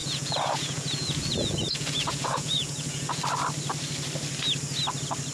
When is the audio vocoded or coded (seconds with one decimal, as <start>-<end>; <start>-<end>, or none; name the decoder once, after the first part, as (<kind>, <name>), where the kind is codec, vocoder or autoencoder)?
0.0-3.2 (vocoder, Vocos)